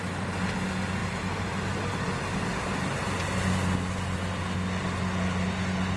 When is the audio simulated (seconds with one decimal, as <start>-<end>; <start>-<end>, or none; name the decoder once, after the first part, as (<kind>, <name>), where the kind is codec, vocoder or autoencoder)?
none